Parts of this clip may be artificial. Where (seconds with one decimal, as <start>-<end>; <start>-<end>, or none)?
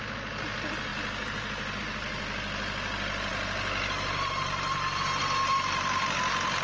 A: none